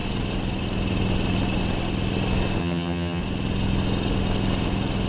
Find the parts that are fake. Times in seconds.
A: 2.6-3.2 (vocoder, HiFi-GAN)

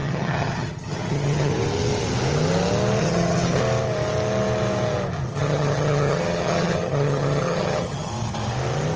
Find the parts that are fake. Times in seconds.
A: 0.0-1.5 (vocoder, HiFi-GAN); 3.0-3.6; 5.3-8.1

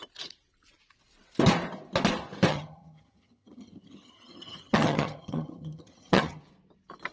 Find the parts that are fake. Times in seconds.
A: 2.5-6.4 (vocoder, HiFi-GAN)

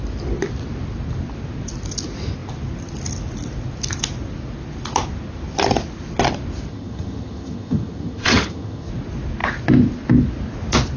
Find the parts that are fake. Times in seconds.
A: 6.7-8.9 (vocoder, HiFi-GAN)

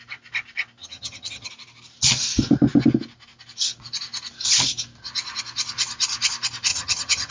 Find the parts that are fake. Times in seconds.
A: 0.8-1.5 (vocoder, HiFi-GAN); 6.7-7.3

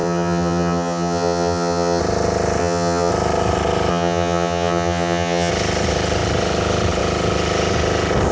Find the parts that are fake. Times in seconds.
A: 0.0-2.0 (vocoder, HiFi-GAN); 2.6-3.1; 3.9-5.5

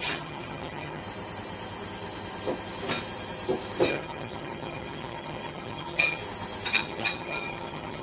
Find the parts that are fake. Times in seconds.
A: 0.0-1.0 (vocoder, HiFi-GAN); 3.9-6.2; 6.7-8.0